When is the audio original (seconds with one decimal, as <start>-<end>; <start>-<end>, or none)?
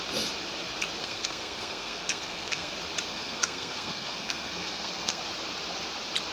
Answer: 0.0-1.0; 2.7-3.1; 5.2-6.3